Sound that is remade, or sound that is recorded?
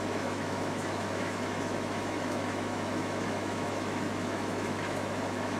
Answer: remade